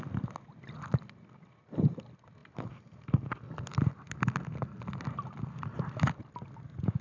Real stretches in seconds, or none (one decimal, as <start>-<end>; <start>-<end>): 0.0-7.0